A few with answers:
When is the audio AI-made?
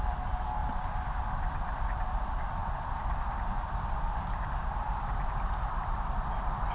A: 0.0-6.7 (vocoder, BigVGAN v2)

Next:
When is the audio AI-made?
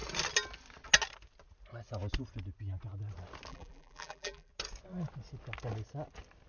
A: 3.5-4.5 (vocoder, BigVGAN v2)